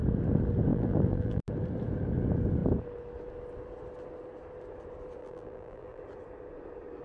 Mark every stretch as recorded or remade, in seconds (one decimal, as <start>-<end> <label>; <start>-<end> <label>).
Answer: 0.0-0.7 recorded; 0.7-1.4 remade; 1.4-5.2 recorded; 5.2-6.0 remade; 6.0-7.0 recorded